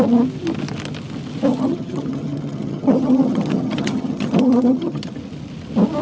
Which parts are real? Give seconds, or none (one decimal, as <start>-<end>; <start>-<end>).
0.0-1.5; 5.1-6.0